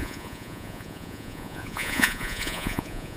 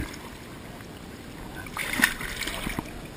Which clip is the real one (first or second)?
second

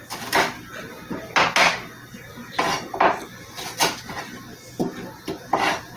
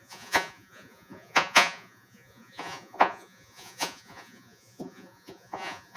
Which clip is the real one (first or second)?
first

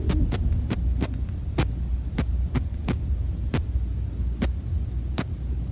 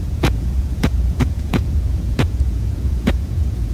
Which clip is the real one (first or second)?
first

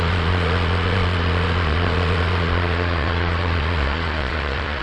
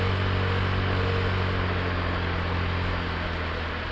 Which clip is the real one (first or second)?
second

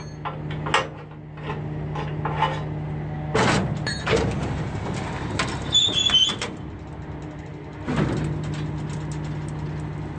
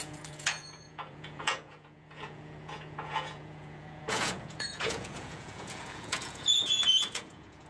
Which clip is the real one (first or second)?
first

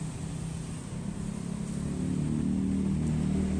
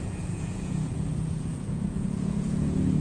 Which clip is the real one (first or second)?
first